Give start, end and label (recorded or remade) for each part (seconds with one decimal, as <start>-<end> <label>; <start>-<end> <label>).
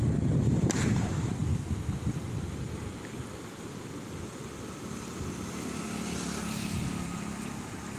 0.0-8.0 recorded